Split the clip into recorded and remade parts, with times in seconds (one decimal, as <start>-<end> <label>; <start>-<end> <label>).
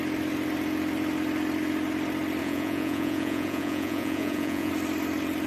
0.0-2.4 recorded; 2.4-4.7 remade; 4.7-5.5 recorded